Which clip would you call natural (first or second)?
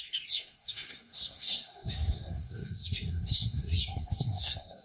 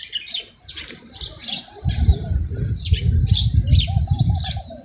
second